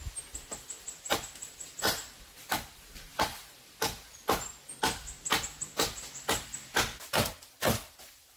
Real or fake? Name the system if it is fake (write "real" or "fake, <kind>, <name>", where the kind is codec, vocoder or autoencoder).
real